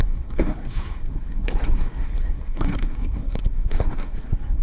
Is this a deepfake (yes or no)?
yes